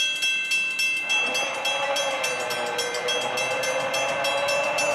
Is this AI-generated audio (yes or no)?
no